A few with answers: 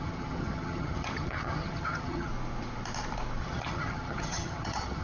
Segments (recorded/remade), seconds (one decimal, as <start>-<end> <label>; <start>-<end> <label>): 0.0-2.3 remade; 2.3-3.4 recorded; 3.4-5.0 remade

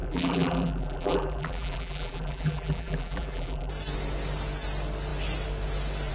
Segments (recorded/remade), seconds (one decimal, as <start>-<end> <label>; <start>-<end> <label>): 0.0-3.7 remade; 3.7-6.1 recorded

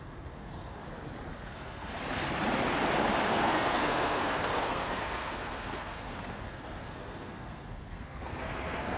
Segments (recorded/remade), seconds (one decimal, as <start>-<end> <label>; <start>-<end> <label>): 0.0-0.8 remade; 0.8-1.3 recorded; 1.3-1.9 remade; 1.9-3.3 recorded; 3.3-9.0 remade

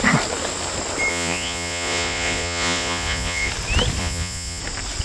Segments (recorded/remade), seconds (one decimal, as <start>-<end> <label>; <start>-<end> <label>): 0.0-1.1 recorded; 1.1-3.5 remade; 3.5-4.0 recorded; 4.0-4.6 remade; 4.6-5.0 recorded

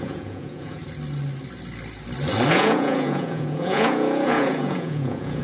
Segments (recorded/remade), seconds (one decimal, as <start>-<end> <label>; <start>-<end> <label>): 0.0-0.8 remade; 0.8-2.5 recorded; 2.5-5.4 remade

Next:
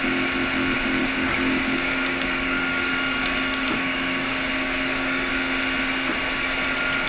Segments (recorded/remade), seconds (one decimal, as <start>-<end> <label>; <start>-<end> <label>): 0.0-1.0 recorded; 1.0-5.3 remade; 5.3-7.1 recorded